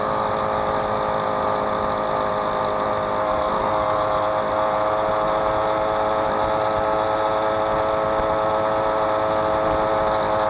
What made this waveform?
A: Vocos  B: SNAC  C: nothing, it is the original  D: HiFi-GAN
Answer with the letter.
C